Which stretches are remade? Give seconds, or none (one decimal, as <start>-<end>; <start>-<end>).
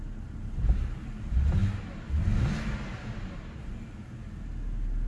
none